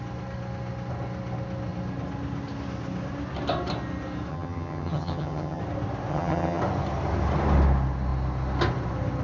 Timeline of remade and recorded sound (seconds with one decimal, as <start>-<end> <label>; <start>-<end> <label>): 0.0-4.3 recorded; 4.3-5.6 remade; 5.6-6.1 recorded; 6.1-6.6 remade; 6.6-9.2 recorded